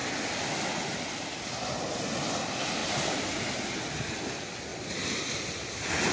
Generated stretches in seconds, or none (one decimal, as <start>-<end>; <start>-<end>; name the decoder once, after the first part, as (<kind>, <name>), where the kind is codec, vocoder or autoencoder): 0.0-1.0 (vocoder, BigVGAN v2); 4.7-6.1